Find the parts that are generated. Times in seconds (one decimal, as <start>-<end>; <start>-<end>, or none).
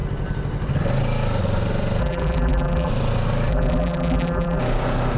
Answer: 2.0-2.9; 3.5-4.6